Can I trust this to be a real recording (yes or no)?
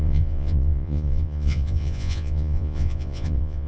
no